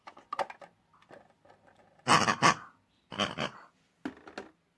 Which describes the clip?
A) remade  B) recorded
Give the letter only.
B